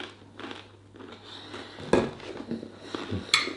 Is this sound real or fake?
real